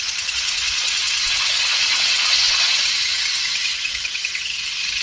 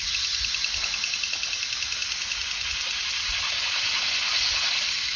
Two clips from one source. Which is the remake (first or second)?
first